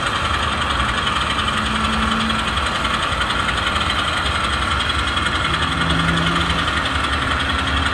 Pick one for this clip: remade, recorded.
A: recorded